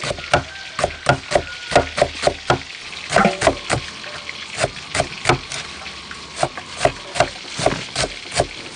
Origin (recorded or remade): recorded